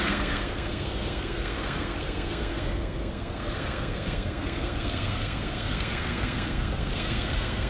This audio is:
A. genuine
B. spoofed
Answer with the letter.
B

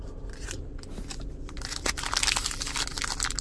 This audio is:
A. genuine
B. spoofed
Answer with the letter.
A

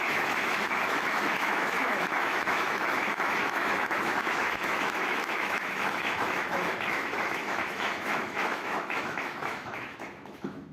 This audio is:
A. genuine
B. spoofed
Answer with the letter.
B